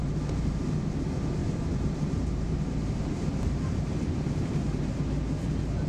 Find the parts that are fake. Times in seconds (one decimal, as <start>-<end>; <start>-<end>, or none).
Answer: 1.4-4.9